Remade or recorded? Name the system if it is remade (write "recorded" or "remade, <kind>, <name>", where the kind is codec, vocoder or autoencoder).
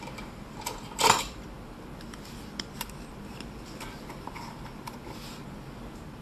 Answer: recorded